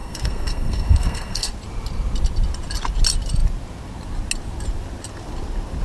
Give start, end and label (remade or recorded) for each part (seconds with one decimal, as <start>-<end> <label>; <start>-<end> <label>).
0.0-1.5 remade; 1.5-5.8 recorded